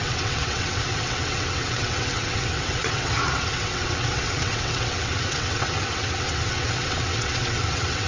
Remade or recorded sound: remade